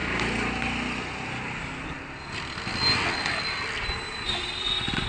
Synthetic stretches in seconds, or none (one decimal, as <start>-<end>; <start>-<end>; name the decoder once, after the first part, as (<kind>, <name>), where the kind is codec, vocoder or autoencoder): none